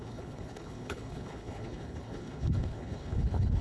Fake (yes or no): yes